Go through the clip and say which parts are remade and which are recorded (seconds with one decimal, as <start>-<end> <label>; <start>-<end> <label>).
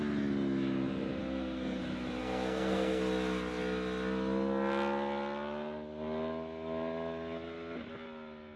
0.0-1.2 recorded; 1.2-1.8 remade; 1.8-2.2 recorded; 2.2-3.0 remade; 3.0-8.6 recorded